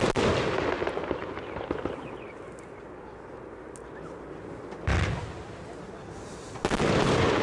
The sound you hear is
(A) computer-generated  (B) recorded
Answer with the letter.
B